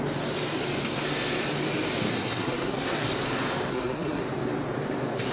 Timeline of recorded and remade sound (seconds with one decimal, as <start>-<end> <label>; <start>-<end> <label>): 0.0-2.1 recorded; 2.1-3.1 remade; 3.1-3.7 recorded; 3.7-4.2 remade; 4.2-5.3 recorded